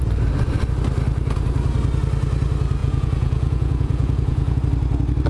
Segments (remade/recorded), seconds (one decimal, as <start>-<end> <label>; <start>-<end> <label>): 0.0-2.8 recorded; 2.8-4.6 remade; 4.6-5.3 recorded